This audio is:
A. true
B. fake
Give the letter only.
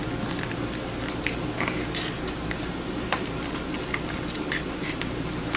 A